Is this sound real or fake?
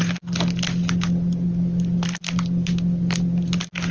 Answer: real